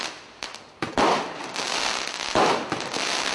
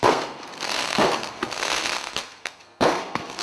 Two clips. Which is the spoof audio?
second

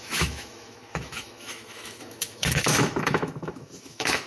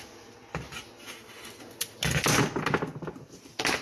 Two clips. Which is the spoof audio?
first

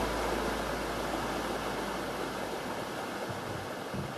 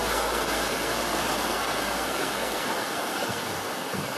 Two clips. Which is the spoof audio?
second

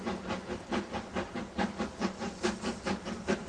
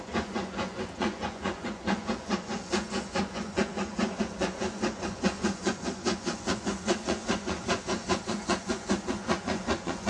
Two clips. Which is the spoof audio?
second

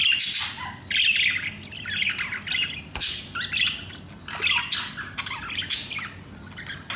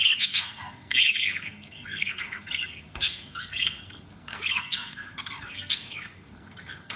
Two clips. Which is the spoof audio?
second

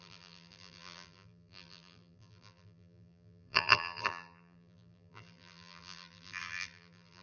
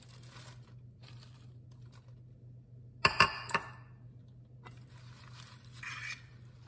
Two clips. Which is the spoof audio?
first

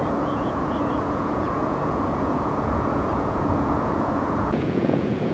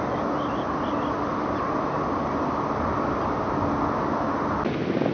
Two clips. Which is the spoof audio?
first